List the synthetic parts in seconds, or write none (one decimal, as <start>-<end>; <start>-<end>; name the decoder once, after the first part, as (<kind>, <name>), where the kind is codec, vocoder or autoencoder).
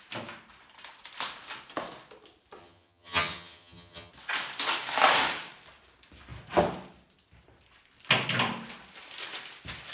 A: 2.6-4.1 (vocoder, HiFi-GAN)